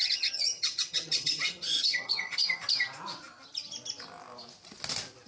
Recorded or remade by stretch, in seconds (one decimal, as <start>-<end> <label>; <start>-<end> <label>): 0.0-2.4 remade; 2.4-5.3 recorded